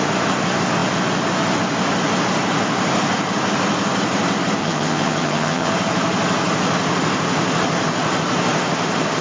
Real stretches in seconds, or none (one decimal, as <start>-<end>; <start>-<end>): 0.0-4.6; 5.7-9.2

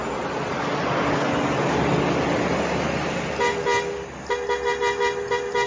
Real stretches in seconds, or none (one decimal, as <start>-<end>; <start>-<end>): 0.0-5.7

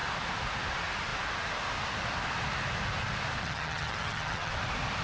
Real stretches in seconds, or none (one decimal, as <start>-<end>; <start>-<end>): 0.0-3.4; 4.5-5.0

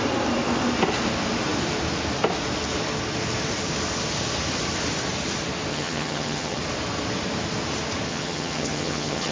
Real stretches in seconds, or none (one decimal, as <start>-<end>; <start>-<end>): 0.0-5.7; 6.6-8.1

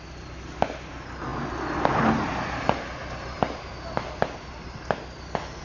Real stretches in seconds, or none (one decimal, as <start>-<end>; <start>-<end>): 0.0-5.6

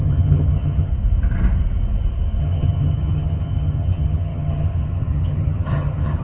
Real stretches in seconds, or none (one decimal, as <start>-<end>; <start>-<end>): 0.9-2.4

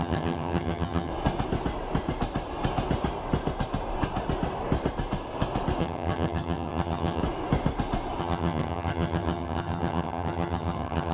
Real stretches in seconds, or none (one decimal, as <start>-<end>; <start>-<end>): 1.1-5.8; 7.2-8.2

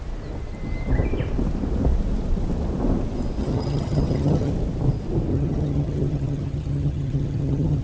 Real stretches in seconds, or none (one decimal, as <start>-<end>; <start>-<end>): 0.0-3.4; 4.5-5.3